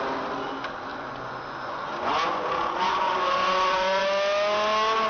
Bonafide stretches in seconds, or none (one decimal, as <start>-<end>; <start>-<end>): 0.0-0.9; 4.0-5.1